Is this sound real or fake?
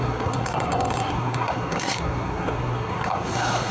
fake